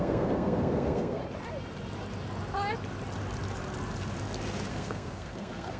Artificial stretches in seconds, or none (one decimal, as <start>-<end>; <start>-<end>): 0.0-1.2; 4.7-5.8